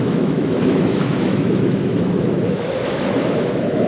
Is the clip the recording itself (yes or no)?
no